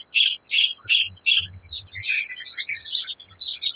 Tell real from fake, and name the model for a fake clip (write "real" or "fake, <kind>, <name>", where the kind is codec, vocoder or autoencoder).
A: real